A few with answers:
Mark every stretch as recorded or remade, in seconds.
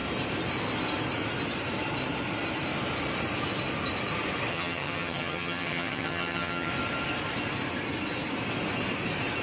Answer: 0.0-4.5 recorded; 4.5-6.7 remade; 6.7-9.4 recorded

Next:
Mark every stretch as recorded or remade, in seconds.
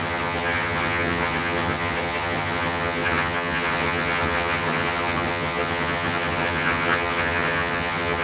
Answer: 0.0-8.2 remade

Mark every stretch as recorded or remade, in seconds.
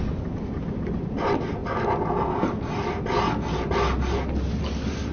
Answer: 0.0-5.1 recorded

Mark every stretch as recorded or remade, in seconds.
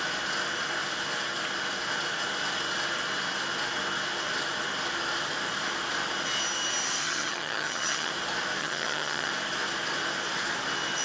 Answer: 0.0-7.0 recorded; 7.0-8.1 remade; 8.1-8.6 recorded; 8.6-9.3 remade; 9.3-11.0 recorded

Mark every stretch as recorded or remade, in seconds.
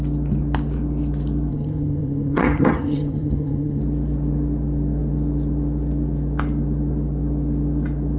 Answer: 0.0-1.5 recorded; 1.5-3.8 remade; 3.8-8.2 recorded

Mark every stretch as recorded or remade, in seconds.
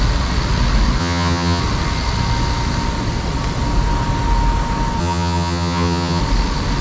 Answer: 0.0-1.0 recorded; 1.0-1.6 remade; 1.6-5.0 recorded; 5.0-6.2 remade; 6.2-6.8 recorded